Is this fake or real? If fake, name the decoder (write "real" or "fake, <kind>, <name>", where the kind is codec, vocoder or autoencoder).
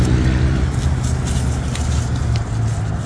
real